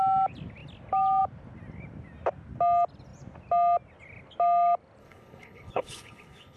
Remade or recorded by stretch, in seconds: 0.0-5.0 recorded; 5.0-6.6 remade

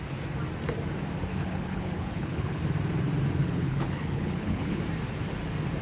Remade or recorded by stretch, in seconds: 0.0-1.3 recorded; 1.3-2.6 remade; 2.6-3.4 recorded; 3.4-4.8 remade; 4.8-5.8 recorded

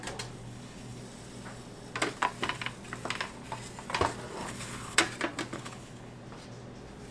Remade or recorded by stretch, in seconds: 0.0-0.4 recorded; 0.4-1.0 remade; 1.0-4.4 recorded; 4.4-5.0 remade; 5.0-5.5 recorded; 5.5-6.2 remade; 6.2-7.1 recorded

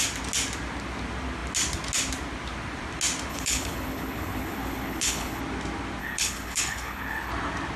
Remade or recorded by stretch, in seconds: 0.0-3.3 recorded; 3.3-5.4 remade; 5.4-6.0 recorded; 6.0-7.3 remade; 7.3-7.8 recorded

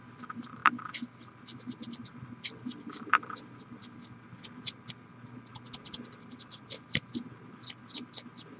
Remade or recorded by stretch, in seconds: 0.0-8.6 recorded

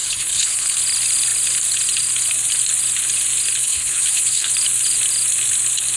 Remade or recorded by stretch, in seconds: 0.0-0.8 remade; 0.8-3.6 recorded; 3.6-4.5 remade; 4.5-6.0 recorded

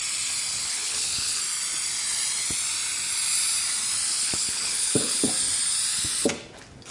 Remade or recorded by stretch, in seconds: 0.0-0.6 recorded; 0.6-1.4 remade; 1.4-4.1 recorded; 4.1-5.3 remade; 5.3-6.9 recorded